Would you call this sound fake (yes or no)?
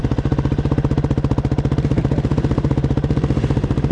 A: no